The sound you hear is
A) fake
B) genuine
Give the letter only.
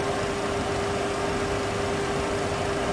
B